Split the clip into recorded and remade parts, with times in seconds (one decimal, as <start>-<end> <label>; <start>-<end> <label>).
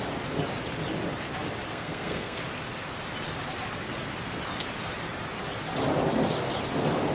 0.0-1.7 recorded; 1.7-2.4 remade; 2.4-7.1 recorded